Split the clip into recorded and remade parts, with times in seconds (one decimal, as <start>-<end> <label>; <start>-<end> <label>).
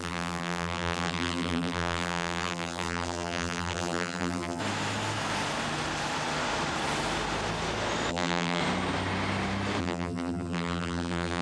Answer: 0.0-4.6 remade; 4.6-8.1 recorded; 8.1-8.6 remade; 8.6-9.8 recorded; 9.8-11.4 remade